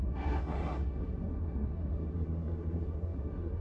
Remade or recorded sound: remade